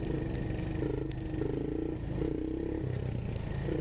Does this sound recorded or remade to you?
recorded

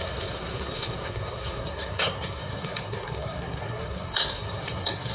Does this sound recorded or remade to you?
remade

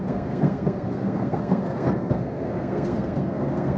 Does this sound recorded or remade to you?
remade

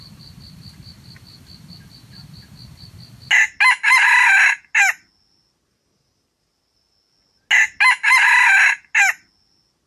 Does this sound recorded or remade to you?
recorded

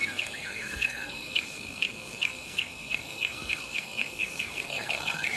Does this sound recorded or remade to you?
remade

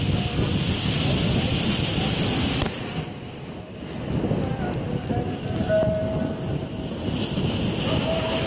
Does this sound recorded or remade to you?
recorded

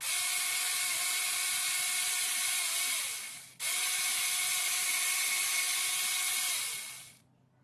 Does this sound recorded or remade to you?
recorded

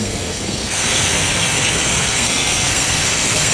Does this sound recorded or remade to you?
remade